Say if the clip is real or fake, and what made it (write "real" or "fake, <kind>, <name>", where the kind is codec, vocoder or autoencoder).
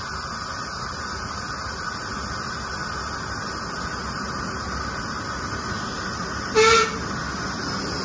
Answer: real